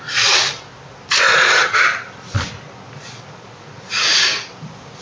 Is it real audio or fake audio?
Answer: real